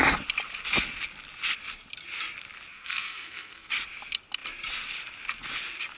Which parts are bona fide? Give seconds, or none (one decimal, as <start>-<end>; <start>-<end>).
0.0-2.7; 3.7-6.0